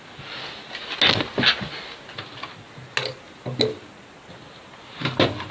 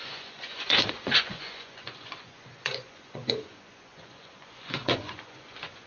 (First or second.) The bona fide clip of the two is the first